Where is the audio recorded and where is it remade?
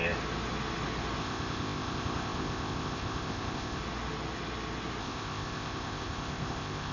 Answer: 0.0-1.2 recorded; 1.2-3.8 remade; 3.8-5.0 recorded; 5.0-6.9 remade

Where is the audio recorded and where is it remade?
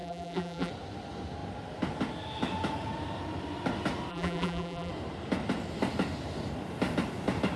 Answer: 0.0-0.7 remade; 0.7-4.1 recorded; 4.1-4.9 remade; 4.9-7.6 recorded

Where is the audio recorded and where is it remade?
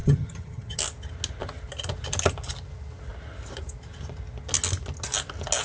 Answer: 0.0-0.8 remade; 0.8-5.6 recorded